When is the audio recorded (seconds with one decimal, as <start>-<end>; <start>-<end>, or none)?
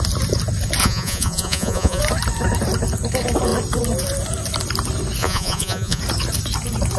0.0-0.8; 2.0-5.2; 6.0-7.0